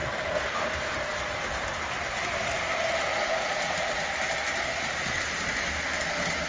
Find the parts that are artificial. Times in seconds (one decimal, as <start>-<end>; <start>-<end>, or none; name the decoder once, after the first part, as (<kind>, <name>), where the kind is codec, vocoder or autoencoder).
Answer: 3.1-4.1 (vocoder, Vocos)